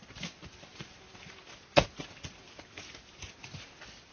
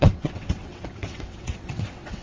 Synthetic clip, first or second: second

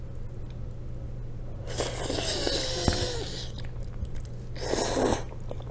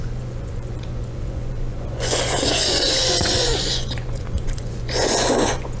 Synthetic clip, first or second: second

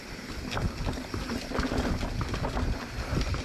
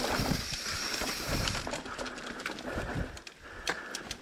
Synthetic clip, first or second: second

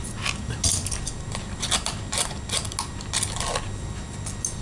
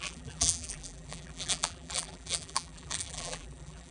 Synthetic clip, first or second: second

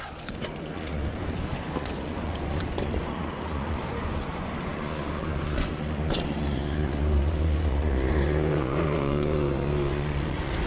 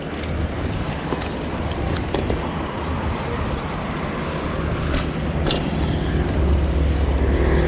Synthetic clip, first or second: first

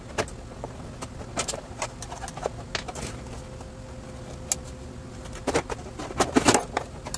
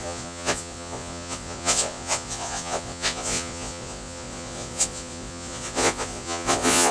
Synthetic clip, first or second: second